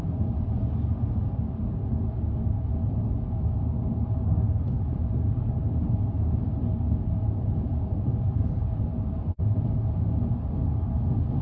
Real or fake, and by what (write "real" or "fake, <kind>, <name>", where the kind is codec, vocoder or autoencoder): real